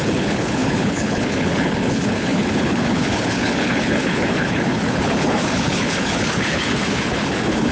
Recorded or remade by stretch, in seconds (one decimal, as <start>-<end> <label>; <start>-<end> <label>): 0.0-7.7 remade